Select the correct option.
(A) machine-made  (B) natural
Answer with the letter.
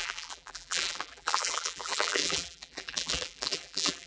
A